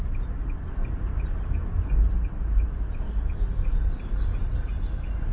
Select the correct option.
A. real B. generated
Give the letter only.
A